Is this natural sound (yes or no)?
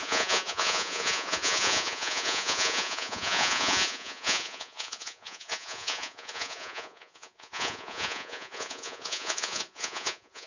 no